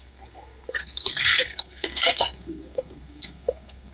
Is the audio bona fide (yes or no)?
no